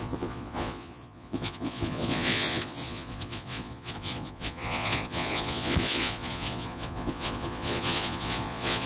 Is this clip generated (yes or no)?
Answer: yes